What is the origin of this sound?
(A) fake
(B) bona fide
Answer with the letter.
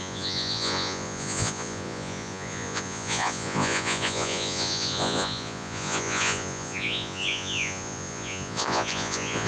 A